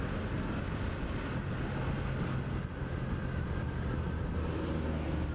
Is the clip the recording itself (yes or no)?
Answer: yes